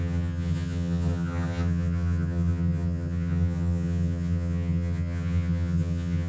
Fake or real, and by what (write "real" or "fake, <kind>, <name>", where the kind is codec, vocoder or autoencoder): fake, vocoder, HiFi-GAN